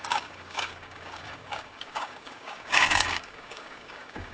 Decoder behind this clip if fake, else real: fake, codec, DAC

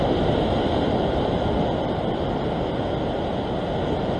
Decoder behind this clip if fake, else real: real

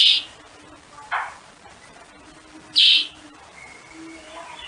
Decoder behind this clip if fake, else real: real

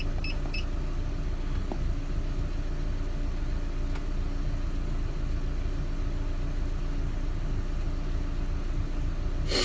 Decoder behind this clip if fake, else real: real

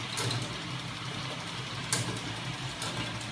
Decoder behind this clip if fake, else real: real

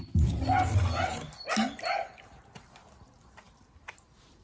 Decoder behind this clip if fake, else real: real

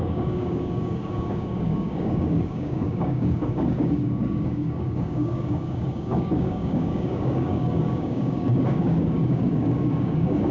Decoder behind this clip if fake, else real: fake, codec, DAC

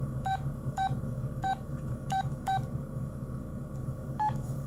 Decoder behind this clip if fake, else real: fake, codec, DAC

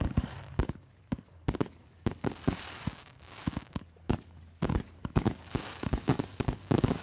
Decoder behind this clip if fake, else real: fake, codec, DAC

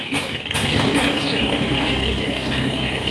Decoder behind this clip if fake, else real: fake, codec, DAC